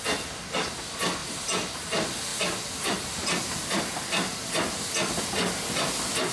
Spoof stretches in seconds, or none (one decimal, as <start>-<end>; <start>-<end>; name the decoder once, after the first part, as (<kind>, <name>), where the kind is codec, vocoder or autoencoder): none